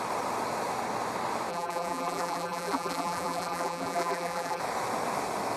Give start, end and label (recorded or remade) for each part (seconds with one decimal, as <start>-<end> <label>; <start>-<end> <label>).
0.0-1.5 recorded; 1.5-4.6 remade; 4.6-5.6 recorded